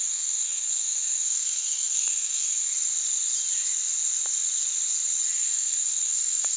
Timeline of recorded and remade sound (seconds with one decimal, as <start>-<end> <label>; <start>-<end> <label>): 0.0-2.7 remade; 2.7-5.3 recorded; 5.3-6.6 remade